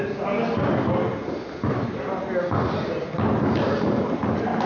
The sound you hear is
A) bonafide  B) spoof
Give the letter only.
A